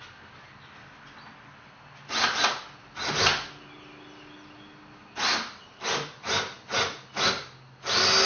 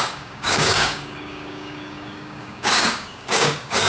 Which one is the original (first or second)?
first